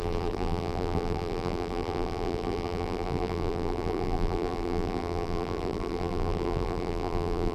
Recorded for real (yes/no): no